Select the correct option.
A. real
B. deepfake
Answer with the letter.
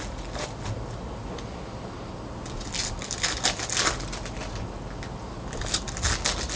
A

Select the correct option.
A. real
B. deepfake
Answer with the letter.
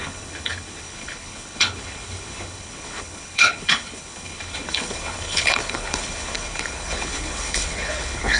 B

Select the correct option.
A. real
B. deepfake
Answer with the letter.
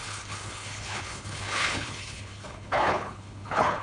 B